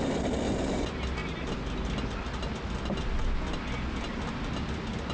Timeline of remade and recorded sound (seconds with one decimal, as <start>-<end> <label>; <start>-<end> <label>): 0.0-5.1 recorded